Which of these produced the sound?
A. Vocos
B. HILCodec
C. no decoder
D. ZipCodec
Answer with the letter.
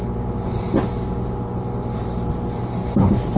C